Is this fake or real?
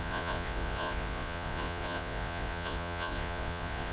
fake